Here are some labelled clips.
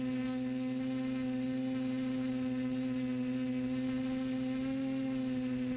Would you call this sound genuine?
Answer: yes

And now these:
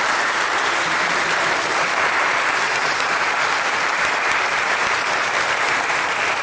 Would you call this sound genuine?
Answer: no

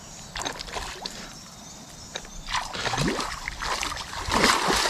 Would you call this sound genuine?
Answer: yes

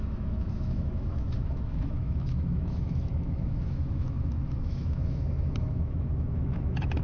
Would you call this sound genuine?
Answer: no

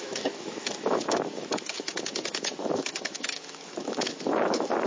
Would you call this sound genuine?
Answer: no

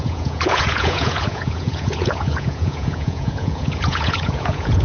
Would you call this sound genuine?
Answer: no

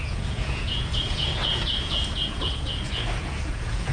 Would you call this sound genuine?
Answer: no